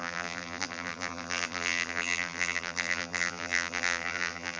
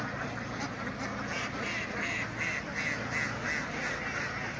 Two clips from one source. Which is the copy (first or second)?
first